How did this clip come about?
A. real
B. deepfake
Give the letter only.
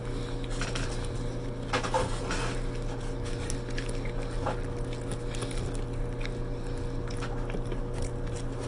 A